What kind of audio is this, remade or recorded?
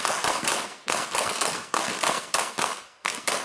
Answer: remade